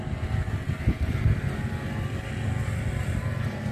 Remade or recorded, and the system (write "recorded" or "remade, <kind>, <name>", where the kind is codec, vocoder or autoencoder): recorded